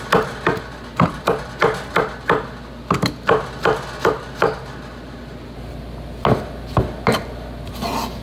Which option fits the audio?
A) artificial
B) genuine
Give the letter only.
B